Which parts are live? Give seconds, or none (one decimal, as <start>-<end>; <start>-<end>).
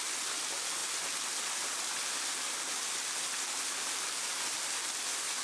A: 0.0-5.4